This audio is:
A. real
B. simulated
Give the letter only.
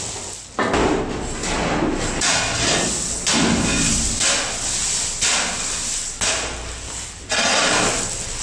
A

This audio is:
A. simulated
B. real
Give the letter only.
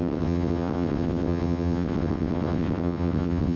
A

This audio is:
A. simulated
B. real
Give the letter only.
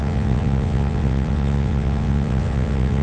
A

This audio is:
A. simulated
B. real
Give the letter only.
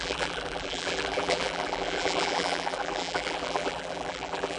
A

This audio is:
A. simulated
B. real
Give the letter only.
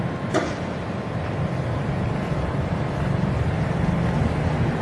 B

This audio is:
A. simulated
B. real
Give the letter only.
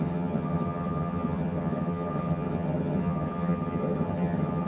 A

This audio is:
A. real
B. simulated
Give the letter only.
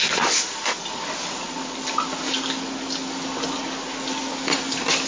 A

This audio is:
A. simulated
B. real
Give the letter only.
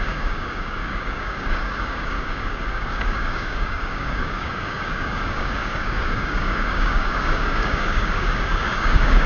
A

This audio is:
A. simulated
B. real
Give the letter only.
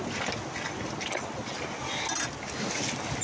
B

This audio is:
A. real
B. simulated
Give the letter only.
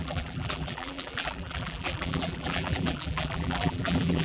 B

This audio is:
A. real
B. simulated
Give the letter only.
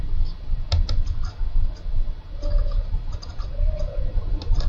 A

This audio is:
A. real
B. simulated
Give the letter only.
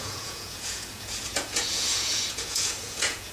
B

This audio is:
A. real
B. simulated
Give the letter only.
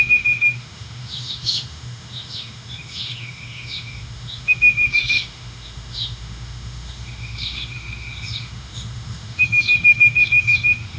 B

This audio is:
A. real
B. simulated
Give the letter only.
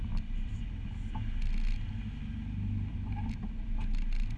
A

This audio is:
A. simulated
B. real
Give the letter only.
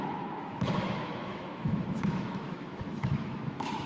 A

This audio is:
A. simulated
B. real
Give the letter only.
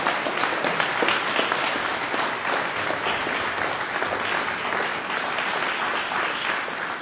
B